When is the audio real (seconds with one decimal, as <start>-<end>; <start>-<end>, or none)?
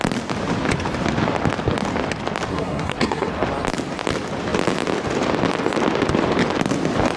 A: 0.0-2.5; 3.3-7.2